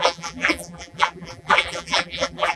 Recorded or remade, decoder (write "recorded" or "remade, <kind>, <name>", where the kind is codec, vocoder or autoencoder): remade, vocoder, BigVGAN v2